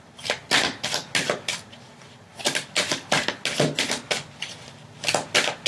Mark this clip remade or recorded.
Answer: recorded